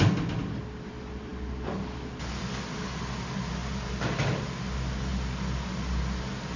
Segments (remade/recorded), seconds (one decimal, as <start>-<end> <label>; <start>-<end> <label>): 0.0-6.6 recorded